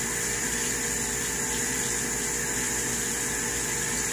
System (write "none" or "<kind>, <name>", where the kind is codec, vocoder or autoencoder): none